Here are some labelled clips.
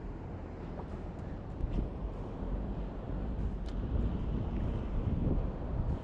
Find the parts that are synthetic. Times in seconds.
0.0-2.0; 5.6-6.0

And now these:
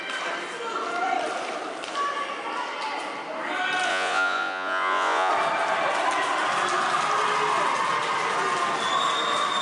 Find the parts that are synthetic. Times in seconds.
3.9-5.3

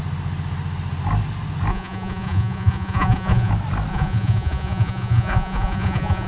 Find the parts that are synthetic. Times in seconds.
1.7-3.5; 3.9-6.3